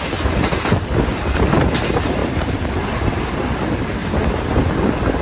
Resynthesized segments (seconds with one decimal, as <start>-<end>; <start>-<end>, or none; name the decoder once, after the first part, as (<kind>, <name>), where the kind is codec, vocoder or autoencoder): 2.2-3.2 (vocoder, BigVGAN v2)